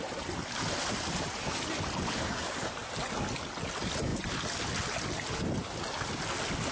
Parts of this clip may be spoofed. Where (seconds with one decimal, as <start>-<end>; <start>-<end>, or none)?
none